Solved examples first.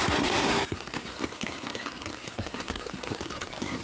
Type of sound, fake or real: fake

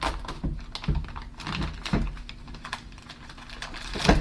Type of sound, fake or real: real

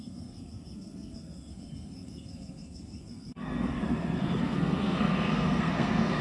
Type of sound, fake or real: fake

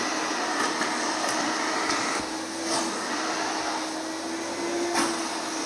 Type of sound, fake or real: real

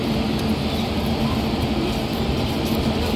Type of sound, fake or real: real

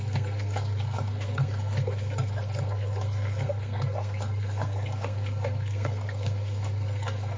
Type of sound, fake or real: fake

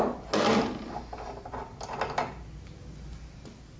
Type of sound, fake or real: real